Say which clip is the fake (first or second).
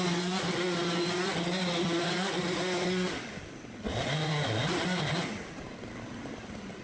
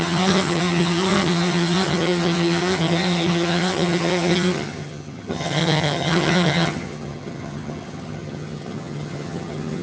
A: second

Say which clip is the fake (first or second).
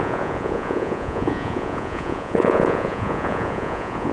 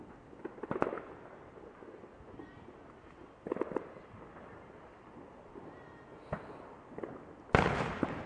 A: first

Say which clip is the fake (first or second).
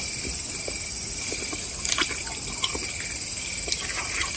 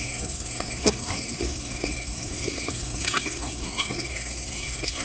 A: second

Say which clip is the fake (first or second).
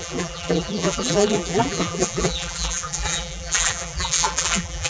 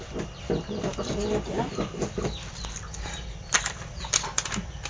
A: first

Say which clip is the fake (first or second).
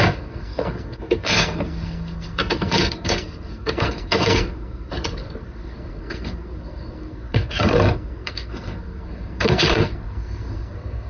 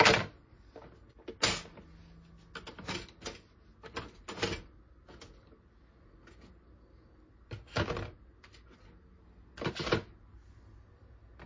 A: first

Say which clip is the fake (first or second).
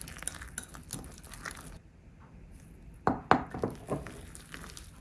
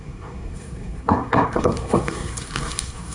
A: second